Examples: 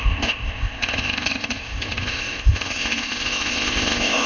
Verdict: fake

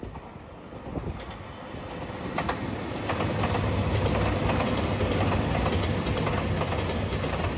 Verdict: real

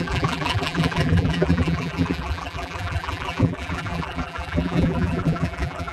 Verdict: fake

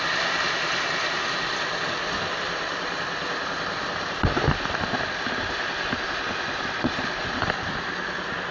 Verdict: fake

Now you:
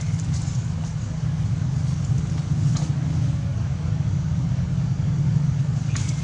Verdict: fake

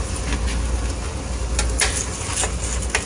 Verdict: real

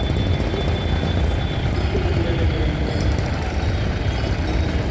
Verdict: real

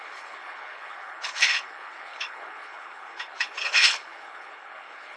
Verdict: fake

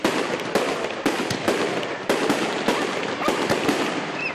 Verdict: real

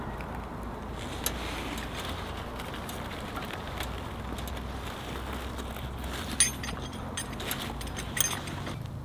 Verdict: real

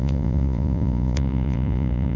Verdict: fake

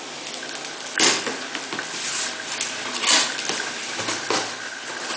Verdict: real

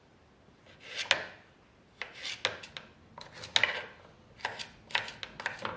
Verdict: real